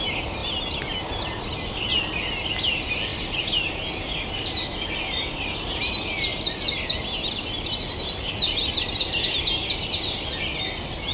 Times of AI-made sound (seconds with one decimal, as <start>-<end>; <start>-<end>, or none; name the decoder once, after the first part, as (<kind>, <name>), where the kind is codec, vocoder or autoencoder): none